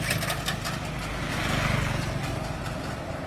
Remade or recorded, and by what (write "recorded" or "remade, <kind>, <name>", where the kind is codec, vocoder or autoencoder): recorded